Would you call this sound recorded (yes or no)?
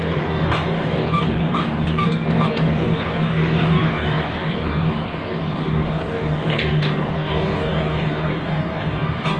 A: no